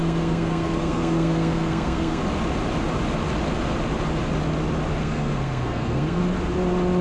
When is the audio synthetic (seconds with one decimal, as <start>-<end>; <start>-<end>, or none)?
0.0-2.2; 5.0-6.2